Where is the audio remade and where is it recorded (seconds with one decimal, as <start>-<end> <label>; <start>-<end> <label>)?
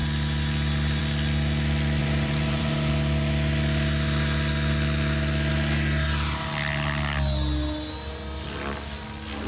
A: 0.0-2.0 recorded; 2.0-2.9 remade; 2.9-9.5 recorded